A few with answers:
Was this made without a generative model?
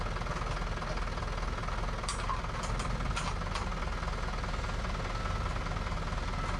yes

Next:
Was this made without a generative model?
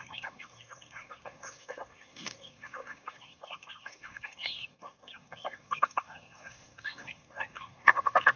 no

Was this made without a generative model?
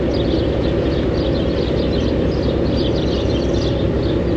yes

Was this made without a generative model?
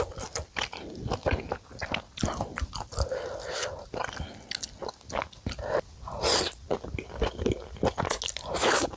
yes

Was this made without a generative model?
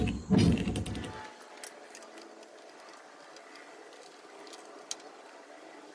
yes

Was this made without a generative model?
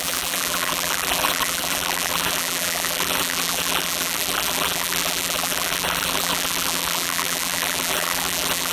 no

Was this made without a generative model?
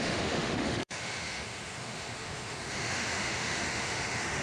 no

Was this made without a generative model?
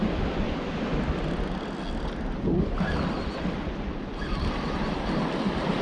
yes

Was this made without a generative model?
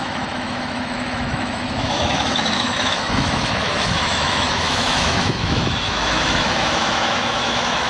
no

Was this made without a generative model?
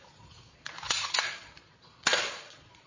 no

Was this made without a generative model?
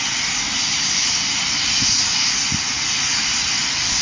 yes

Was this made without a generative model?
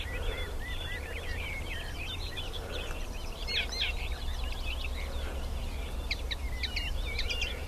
no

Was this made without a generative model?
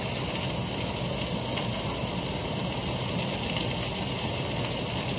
yes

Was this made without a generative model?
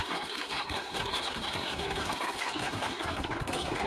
no